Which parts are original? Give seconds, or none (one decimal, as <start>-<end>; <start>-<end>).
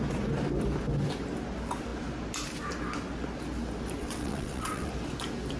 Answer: 0.0-4.0; 4.9-5.6